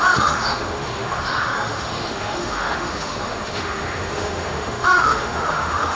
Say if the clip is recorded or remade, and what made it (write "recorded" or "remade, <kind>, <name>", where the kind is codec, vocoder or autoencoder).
remade, autoencoder, DAC-VAE